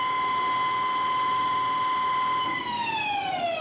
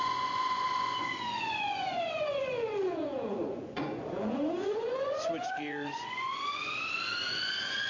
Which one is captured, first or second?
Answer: first